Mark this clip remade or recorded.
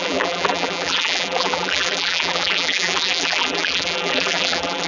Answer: remade